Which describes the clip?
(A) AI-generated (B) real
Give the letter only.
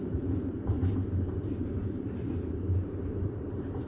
A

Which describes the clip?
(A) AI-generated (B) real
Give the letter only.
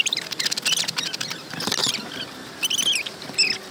B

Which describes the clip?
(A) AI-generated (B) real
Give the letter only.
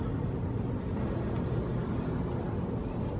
B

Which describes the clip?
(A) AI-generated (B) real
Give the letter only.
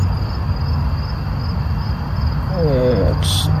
B